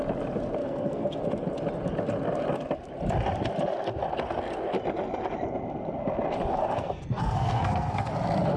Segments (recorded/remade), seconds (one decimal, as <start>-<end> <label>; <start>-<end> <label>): 0.0-0.6 recorded; 0.6-1.2 remade; 1.2-6.6 recorded; 6.6-8.1 remade; 8.1-8.6 recorded